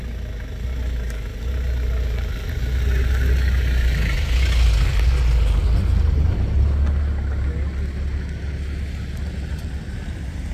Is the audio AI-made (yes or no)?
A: no